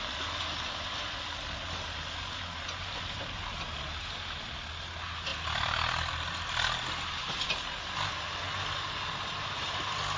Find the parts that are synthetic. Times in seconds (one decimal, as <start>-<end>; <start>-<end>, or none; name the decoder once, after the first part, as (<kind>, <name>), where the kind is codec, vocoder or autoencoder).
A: none